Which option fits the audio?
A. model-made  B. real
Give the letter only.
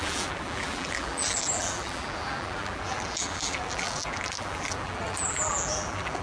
A